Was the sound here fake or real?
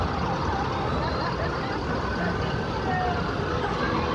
real